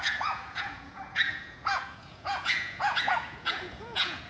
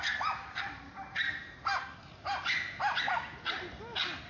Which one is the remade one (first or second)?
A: first